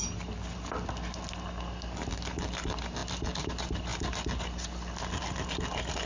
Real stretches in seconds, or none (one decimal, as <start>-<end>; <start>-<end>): 0.0-6.1